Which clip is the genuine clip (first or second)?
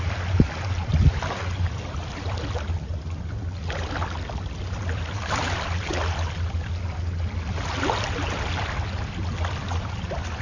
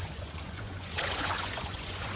first